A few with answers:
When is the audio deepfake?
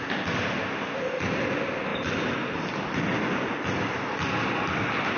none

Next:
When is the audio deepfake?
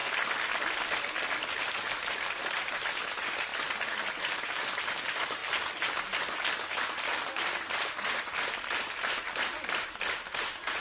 1.6-3.5; 4.2-5.4; 6.7-10.8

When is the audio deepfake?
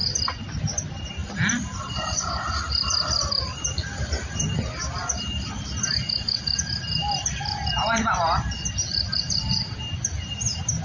1.2-4.7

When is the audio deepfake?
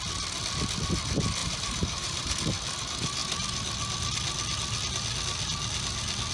1.4-2.3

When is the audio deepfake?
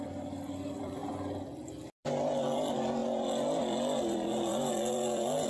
0.0-5.5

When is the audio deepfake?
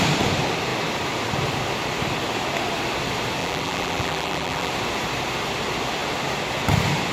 3.4-4.7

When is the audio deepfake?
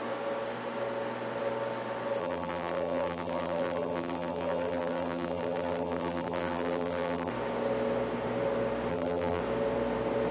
2.2-7.3; 8.9-9.4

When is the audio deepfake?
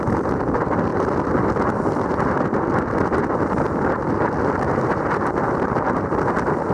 none